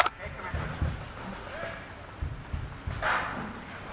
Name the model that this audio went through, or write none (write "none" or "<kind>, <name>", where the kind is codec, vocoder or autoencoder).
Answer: none